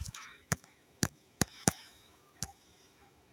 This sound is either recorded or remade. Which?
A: remade